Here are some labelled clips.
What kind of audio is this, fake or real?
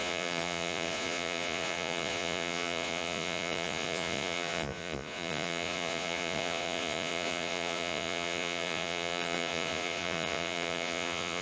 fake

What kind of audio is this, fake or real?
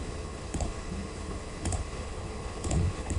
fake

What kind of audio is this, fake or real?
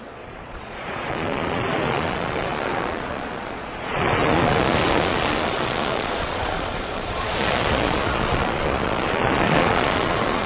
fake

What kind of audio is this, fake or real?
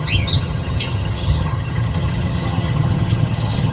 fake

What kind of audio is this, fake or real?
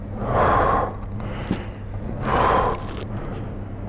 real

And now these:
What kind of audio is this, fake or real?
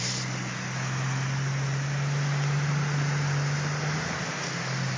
real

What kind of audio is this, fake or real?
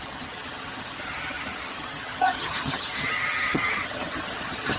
fake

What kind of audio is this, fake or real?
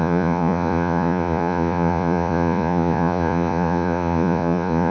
fake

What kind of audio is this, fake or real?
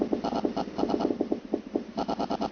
real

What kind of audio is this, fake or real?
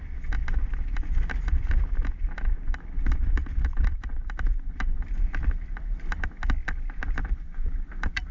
real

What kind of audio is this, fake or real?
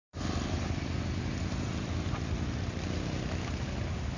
real